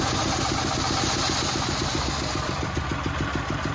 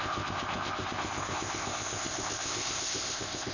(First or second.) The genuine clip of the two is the first